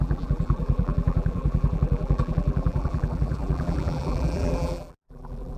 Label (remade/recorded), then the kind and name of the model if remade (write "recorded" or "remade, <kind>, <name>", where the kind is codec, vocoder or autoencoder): remade, vocoder, BigVGAN v2